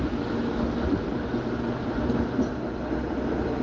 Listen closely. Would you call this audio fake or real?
real